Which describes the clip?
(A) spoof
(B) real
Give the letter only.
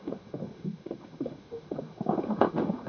A